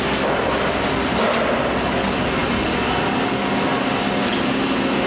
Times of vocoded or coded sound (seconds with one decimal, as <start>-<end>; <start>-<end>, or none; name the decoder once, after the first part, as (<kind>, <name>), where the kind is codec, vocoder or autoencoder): none